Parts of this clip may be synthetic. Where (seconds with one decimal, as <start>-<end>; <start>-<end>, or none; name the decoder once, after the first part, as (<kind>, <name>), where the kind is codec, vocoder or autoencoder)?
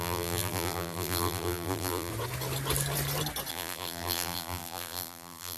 0.0-2.1 (vocoder, BigVGAN v2); 3.5-5.6